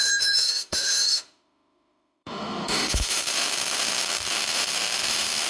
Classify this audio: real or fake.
fake